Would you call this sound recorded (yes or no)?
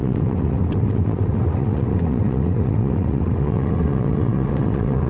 no